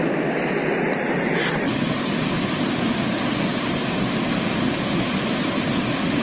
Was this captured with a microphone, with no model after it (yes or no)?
yes